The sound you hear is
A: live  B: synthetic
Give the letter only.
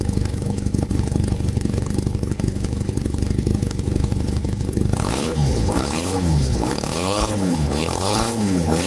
B